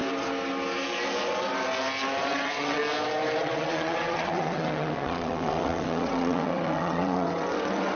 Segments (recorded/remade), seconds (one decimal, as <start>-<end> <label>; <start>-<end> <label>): 0.0-2.2 recorded; 2.2-2.8 remade; 2.8-3.4 recorded; 3.4-8.0 remade